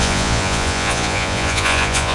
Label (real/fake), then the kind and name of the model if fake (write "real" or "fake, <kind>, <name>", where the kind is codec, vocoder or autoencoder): fake, vocoder, Vocos